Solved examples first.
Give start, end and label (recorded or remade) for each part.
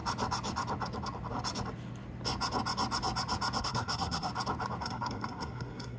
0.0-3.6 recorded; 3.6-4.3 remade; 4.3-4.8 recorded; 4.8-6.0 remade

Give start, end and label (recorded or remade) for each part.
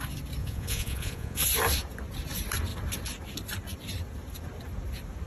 0.0-0.4 recorded; 0.4-1.4 remade; 1.4-5.3 recorded